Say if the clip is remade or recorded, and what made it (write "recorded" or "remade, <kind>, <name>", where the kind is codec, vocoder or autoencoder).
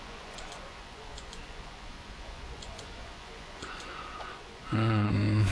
remade, vocoder, Vocos